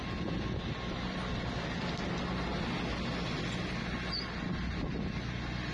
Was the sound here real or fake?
real